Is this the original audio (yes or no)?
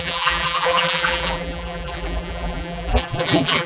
no